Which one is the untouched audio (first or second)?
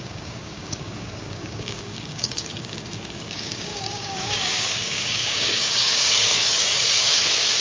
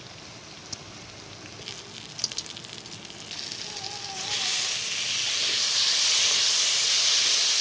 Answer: second